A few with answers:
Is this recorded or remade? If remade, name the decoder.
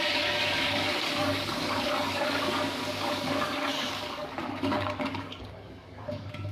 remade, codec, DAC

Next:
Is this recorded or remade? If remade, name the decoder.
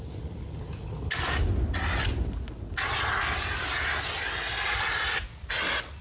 recorded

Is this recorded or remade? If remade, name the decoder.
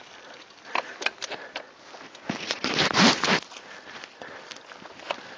recorded